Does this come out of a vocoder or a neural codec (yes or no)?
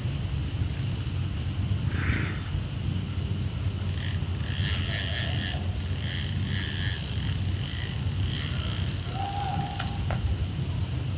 no